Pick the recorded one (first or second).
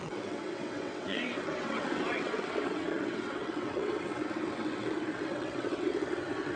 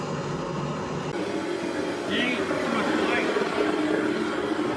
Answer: second